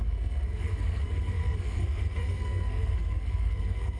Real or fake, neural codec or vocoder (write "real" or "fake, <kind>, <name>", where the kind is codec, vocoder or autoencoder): fake, codec, SNAC